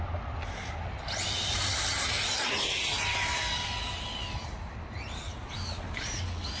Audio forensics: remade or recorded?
recorded